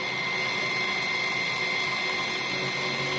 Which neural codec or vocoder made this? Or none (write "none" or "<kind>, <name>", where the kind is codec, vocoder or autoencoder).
none